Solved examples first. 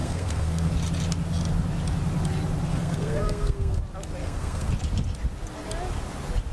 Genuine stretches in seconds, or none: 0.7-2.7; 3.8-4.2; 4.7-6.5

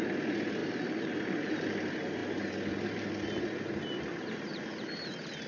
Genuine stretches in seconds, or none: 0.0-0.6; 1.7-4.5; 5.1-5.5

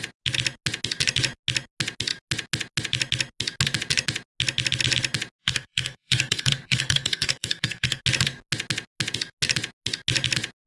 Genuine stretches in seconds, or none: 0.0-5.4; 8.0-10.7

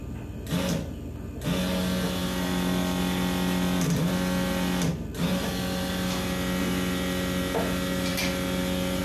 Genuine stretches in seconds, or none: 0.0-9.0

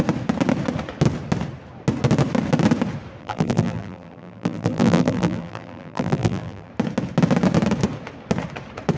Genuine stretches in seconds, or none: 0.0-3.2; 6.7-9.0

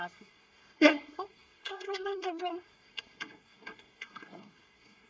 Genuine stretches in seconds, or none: none

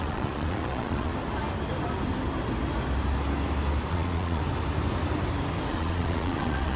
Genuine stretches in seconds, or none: 1.1-3.9; 4.4-5.7